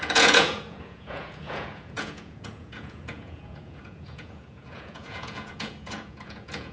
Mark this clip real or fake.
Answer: fake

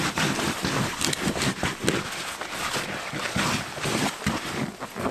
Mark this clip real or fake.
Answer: real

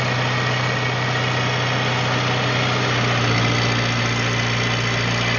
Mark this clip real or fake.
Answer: real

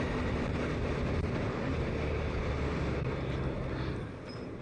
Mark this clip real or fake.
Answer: real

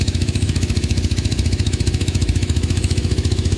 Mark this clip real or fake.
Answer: fake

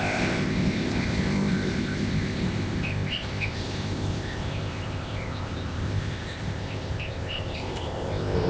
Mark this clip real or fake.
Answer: fake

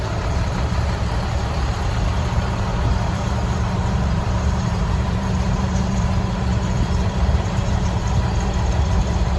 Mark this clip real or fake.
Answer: fake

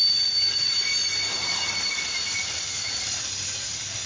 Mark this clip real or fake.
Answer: real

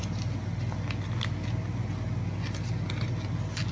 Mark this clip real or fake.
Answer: real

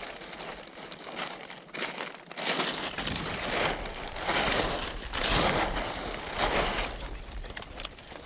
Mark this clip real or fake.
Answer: real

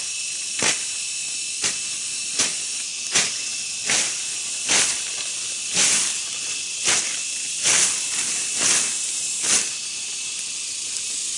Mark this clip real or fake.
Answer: real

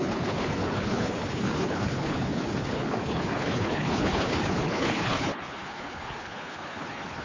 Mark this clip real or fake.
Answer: fake